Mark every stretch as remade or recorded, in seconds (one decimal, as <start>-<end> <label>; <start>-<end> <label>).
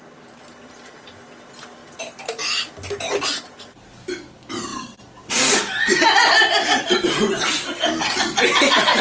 0.0-9.0 recorded